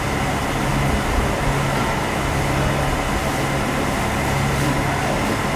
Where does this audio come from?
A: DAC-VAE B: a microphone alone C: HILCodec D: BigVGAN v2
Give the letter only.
B